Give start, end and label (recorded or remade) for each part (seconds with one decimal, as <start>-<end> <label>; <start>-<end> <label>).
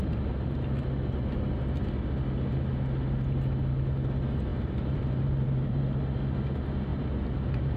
0.0-4.5 recorded; 4.5-5.8 remade; 5.8-6.9 recorded; 6.9-7.8 remade